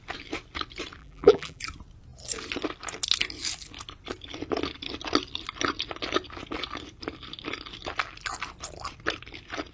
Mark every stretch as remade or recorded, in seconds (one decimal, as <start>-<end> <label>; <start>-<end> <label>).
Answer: 0.0-1.0 recorded; 1.0-1.6 remade; 1.6-9.7 recorded